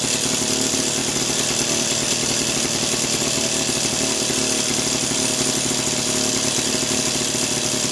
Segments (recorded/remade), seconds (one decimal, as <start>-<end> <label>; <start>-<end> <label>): 0.0-7.9 recorded